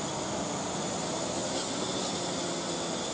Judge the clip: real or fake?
real